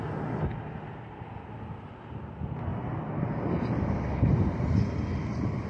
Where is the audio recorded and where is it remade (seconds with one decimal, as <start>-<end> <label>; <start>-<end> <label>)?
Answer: 0.0-5.7 recorded